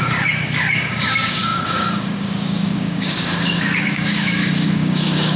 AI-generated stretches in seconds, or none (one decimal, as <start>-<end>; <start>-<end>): 0.0-5.4